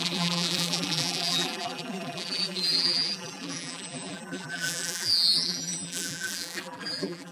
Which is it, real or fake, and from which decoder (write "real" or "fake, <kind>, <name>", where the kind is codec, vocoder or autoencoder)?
fake, vocoder, BigVGAN v2